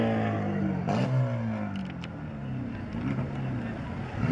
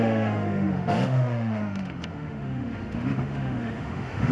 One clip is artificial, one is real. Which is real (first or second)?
first